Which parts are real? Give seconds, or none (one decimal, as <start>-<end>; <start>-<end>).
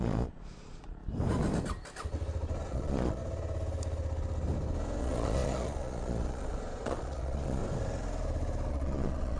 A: 1.0-2.7; 3.2-5.0; 7.6-8.7